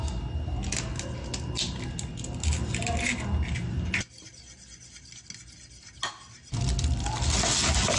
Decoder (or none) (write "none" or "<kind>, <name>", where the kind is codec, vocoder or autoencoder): none